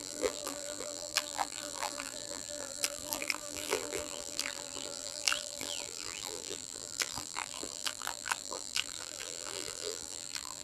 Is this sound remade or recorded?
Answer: remade